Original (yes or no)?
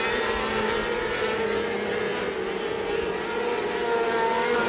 yes